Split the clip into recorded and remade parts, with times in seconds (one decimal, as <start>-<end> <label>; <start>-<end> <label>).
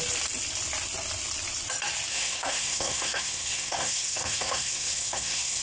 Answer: 0.0-2.1 recorded; 2.1-5.6 remade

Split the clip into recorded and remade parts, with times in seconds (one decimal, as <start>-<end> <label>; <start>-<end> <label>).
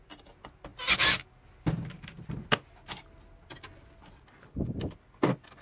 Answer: 0.0-5.6 recorded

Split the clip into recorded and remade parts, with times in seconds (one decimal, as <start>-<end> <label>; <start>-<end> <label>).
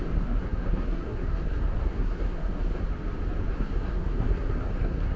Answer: 0.0-2.8 remade; 2.8-3.5 recorded; 3.5-5.2 remade